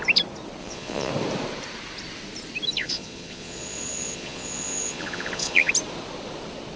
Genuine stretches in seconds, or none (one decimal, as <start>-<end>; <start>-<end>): 0.0-0.6; 1.1-2.8; 5.7-6.8